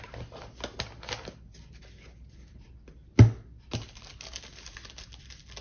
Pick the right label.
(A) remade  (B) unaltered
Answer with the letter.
B